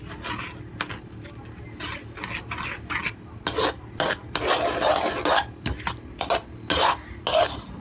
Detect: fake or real real